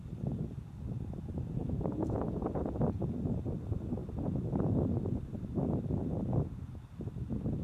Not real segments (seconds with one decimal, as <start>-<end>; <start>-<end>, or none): 1.6-3.0